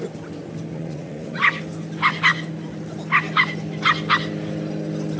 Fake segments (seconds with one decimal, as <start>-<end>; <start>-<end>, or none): 0.7-1.4